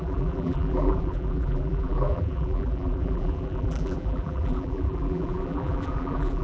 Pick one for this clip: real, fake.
fake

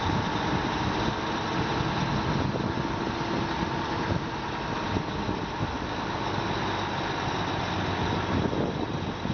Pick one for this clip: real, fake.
real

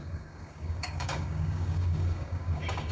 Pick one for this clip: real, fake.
fake